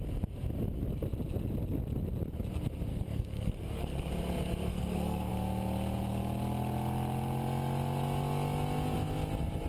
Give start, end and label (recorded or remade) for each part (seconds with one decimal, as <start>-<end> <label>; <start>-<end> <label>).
0.0-2.9 recorded; 2.9-4.1 remade; 4.1-4.7 recorded; 4.7-5.3 remade; 5.3-9.7 recorded